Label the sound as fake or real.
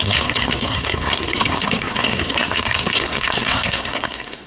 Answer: fake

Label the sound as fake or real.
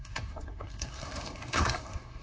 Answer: fake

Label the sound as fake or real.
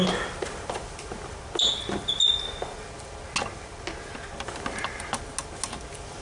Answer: real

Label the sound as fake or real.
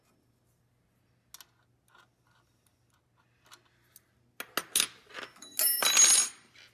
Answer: real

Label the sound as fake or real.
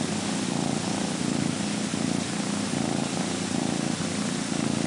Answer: real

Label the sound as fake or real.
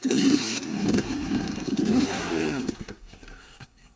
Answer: fake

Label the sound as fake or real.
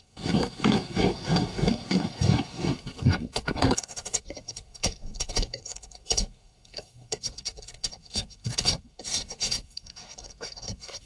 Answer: fake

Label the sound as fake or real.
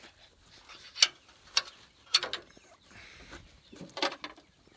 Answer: real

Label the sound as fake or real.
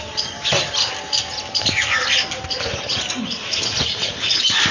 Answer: real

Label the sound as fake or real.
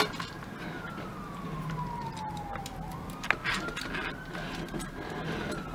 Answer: real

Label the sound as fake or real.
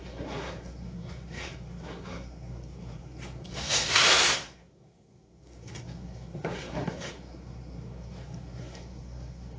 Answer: fake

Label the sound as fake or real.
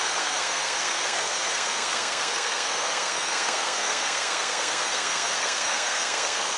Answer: fake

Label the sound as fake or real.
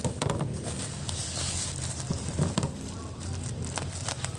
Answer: real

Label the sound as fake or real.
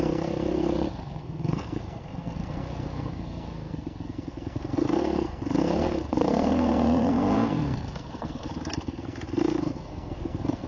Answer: fake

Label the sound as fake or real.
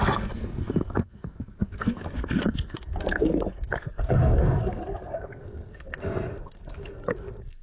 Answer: fake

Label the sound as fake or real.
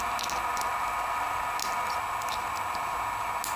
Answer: real